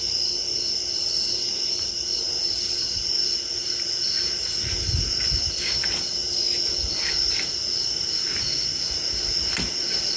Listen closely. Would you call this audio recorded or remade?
recorded